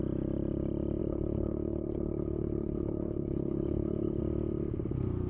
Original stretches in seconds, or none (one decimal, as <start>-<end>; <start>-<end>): 0.0-1.0; 4.2-5.3

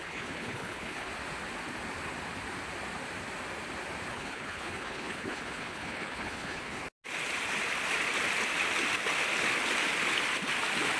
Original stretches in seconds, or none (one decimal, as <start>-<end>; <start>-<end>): 1.1-4.1; 6.8-11.0

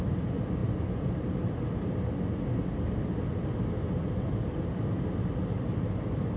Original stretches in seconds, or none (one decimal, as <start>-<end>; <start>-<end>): 0.0-6.4